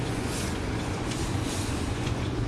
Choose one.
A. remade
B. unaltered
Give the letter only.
A